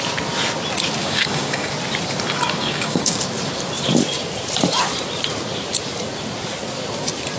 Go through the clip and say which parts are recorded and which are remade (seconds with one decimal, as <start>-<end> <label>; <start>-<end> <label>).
0.0-1.0 recorded; 1.0-1.7 remade; 1.7-2.6 recorded; 2.6-3.2 remade; 3.2-7.4 recorded